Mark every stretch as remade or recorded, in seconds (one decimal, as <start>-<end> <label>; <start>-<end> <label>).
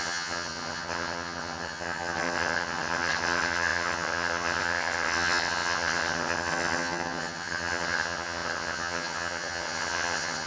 0.0-10.5 remade